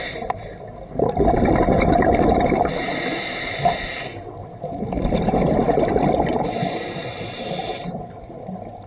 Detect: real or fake real